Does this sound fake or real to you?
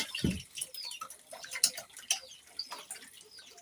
real